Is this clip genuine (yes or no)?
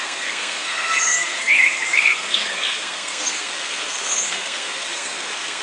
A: no